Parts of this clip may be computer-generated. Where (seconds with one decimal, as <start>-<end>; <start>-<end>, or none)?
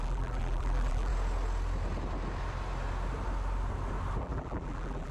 0.0-1.1; 4.2-5.1